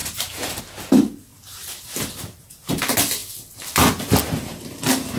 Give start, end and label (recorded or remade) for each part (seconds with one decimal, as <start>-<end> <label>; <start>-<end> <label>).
0.0-0.6 remade; 0.6-1.3 recorded; 1.3-2.8 remade; 2.8-5.2 recorded